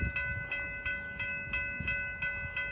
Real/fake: real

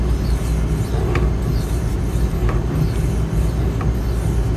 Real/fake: real